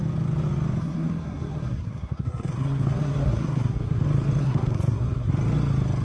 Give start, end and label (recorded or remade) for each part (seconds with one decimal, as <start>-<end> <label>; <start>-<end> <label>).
0.0-0.8 recorded; 0.8-4.0 remade; 4.0-4.4 recorded; 4.4-5.3 remade; 5.3-6.0 recorded